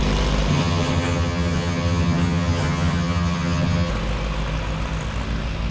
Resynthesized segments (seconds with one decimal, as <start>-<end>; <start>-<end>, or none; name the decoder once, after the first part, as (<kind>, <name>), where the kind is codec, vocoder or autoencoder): 0.5-3.9 (vocoder, HiFi-GAN)